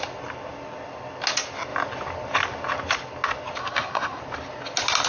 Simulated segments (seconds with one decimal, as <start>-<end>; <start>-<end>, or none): 3.6-4.2